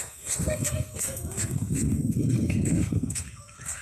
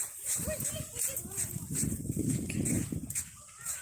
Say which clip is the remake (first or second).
first